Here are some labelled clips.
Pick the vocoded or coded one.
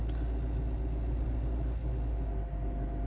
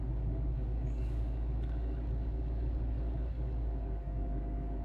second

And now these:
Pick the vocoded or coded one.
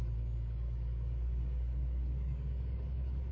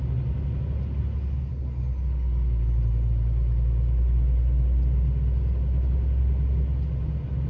first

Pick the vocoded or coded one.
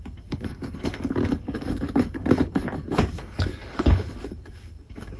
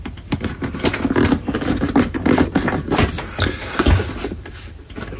first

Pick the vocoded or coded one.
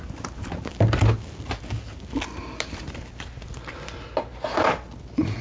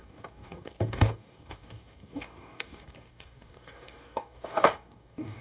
second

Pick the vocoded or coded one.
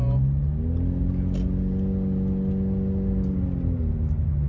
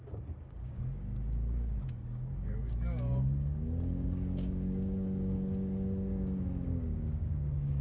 second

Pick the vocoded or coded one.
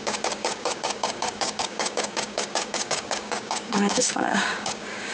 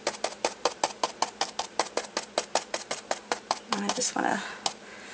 first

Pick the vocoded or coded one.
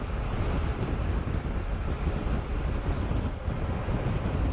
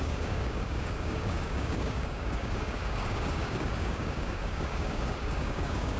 second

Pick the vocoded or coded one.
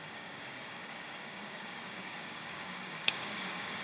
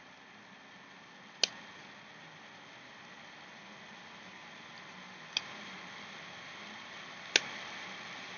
first